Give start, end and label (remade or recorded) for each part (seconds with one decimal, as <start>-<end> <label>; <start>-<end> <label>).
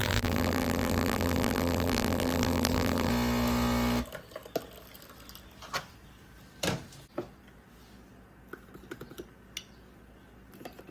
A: 0.0-3.1 remade; 3.1-10.9 recorded